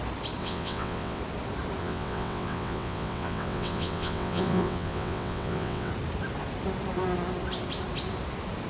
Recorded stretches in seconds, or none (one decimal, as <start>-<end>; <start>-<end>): 0.0-0.4; 1.2-1.8; 5.9-8.7